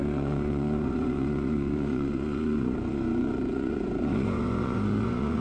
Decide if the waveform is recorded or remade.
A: remade